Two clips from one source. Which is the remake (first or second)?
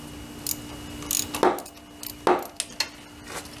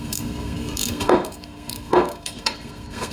second